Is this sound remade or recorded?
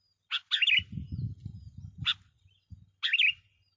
recorded